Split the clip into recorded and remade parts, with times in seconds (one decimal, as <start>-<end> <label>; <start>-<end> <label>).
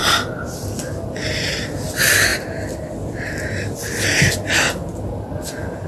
0.0-5.9 recorded